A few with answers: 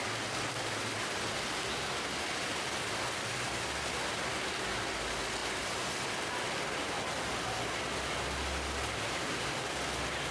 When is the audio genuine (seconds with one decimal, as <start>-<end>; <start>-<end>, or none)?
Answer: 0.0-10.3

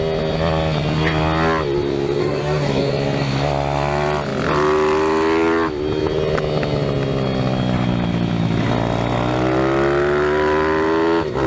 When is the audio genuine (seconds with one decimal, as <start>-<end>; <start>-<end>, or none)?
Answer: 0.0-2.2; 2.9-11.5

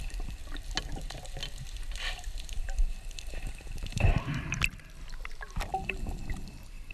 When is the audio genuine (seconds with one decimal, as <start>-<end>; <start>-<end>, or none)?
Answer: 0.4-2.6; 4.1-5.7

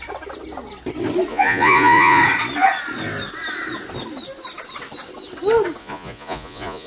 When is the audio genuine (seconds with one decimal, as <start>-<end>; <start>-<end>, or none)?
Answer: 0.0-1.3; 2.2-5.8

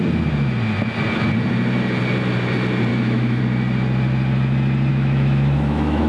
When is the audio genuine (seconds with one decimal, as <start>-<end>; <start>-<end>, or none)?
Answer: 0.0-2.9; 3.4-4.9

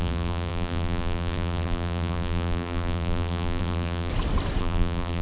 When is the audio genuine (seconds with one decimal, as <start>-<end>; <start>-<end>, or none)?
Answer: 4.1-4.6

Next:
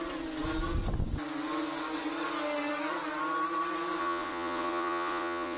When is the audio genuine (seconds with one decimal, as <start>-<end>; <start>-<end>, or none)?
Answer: 0.0-4.0